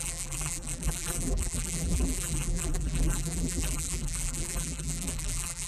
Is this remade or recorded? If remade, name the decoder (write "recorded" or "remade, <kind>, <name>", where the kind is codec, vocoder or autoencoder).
remade, vocoder, BigVGAN v2